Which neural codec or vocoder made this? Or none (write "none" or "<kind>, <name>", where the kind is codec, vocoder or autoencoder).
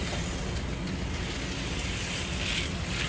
none